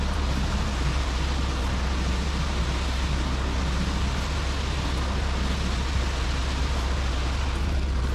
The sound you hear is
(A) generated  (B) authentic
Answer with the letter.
B